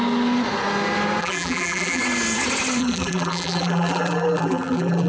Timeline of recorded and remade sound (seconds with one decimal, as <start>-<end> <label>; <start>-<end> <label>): 0.0-1.2 recorded; 1.2-2.0 remade; 2.0-2.8 recorded; 2.8-5.1 remade